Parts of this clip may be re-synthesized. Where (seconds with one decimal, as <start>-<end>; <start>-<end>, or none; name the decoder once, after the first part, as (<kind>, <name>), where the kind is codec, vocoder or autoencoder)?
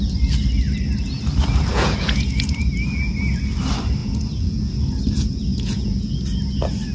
1.7-2.6 (vocoder, Vocos); 4.0-4.7; 5.5-6.2